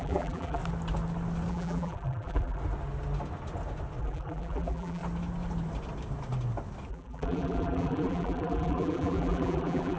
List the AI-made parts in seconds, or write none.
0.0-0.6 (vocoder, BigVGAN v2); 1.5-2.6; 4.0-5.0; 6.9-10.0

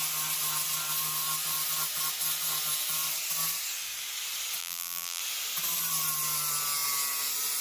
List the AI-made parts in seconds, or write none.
4.6-5.2 (vocoder, BigVGAN v2)

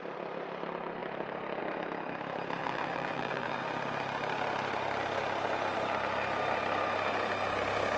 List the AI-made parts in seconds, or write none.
2.6-3.6 (vocoder, BigVGAN v2)

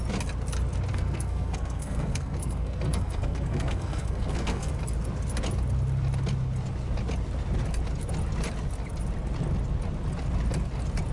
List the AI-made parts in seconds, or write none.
0.9-4.7 (codec, SNAC)

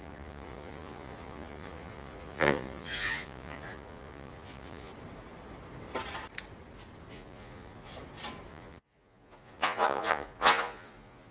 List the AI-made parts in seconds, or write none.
0.0-4.9 (vocoder, Vocos); 7.1-7.9; 8.5-11.3

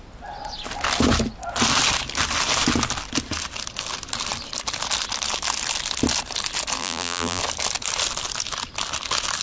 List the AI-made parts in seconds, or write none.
6.8-7.4 (vocoder, BigVGAN v2)

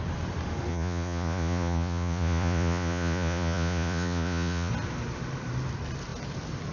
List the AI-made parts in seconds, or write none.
0.7-4.7 (vocoder, Vocos)

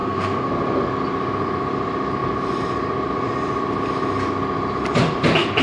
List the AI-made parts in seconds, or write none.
0.0-0.5 (codec, SNAC)